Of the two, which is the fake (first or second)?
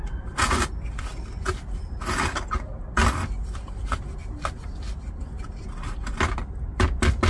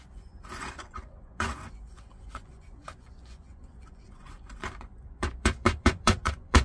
second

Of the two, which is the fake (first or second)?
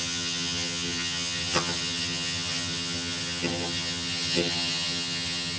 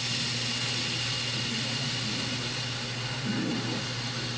first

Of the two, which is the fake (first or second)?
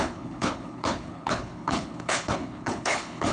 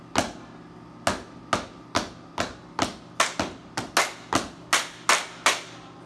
first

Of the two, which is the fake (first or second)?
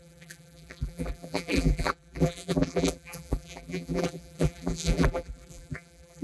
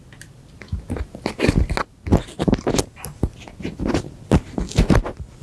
first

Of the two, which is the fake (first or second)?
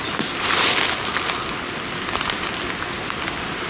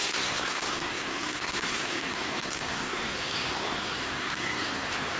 second